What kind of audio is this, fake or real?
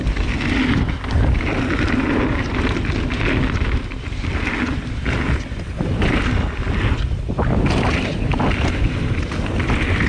real